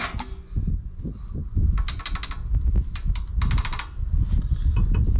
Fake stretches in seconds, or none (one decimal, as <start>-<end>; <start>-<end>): none